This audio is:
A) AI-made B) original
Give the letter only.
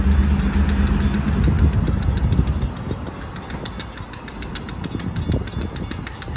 B